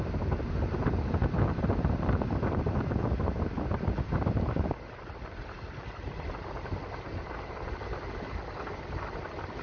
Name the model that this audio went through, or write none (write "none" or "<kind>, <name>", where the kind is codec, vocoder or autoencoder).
none